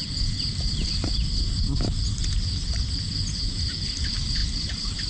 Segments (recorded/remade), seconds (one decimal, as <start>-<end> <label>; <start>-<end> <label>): 0.0-5.1 recorded